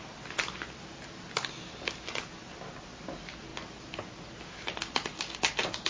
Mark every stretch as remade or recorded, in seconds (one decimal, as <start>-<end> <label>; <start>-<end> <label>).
0.0-5.9 recorded